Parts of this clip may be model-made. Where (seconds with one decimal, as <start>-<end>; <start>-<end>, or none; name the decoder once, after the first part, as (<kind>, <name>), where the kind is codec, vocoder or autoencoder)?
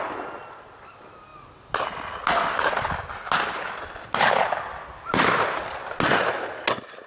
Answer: none